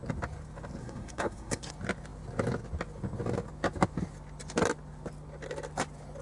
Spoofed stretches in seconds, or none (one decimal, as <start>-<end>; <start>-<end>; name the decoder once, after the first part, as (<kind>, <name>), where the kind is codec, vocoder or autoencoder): 0.8-1.7 (codec, SNAC)